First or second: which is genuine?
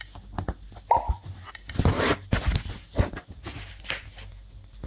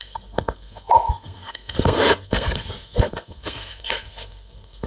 first